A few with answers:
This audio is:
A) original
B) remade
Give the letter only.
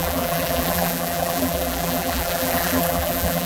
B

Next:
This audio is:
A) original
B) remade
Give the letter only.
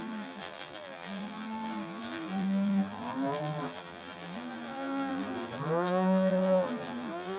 B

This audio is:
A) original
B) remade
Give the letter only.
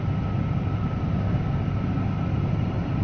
A